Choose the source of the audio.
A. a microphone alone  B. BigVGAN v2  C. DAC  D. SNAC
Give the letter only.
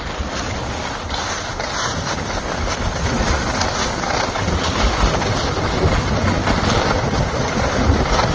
A